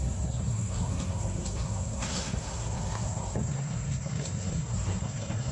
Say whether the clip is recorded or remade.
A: remade